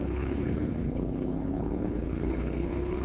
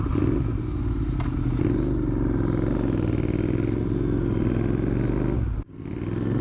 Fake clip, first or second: first